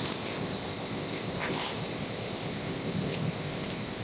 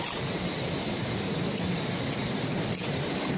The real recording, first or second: second